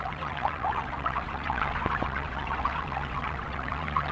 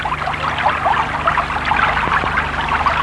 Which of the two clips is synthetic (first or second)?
first